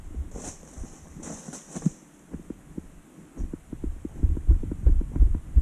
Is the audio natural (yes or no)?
yes